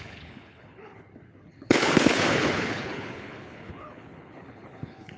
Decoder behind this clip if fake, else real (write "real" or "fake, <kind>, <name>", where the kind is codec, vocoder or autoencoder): fake, codec, HILCodec